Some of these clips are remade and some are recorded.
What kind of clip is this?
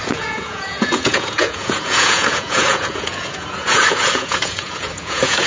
remade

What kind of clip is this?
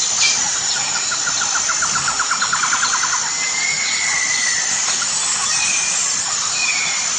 recorded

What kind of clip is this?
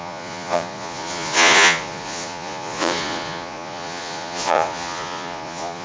remade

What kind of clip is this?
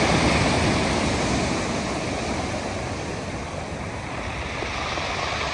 recorded